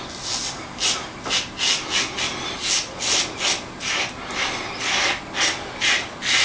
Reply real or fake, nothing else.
real